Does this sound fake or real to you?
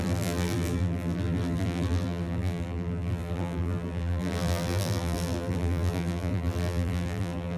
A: fake